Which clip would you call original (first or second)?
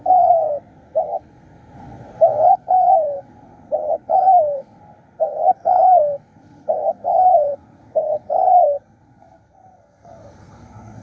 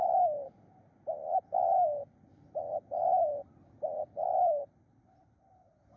second